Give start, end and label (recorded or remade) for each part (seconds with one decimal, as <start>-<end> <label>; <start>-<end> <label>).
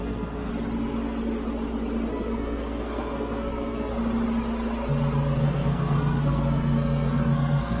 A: 0.0-0.5 remade; 0.5-2.1 recorded; 2.1-3.9 remade; 3.9-5.4 recorded; 5.4-7.8 remade